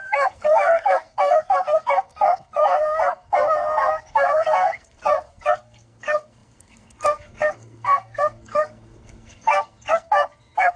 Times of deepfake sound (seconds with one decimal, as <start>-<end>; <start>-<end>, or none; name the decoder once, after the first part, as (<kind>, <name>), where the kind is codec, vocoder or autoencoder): 0.0-10.8 (codec, SNAC)